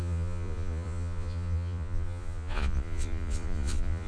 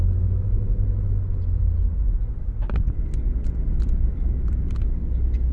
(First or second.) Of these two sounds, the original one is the second